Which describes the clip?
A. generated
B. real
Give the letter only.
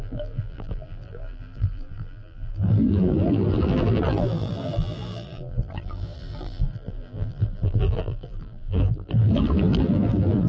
A